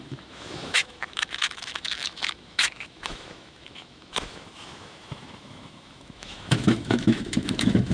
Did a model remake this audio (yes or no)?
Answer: yes